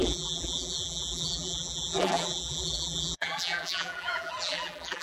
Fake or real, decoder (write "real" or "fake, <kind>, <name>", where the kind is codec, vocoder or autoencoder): fake, vocoder, BigVGAN v2